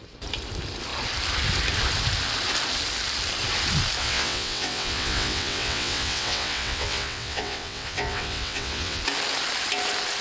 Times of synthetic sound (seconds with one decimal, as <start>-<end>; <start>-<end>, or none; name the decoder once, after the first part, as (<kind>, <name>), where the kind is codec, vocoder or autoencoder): 4.0-9.0 (vocoder, WaveNeXt)